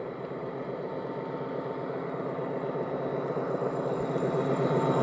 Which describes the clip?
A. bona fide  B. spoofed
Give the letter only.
A